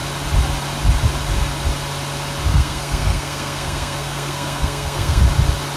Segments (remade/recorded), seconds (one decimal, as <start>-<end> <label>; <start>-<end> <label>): 0.0-2.5 recorded; 2.5-5.2 remade; 5.2-5.8 recorded